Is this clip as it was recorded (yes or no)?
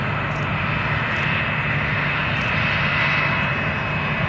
yes